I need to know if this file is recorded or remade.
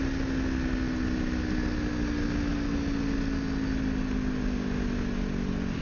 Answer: recorded